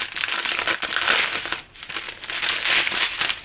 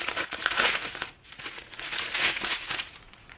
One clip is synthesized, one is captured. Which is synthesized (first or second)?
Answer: second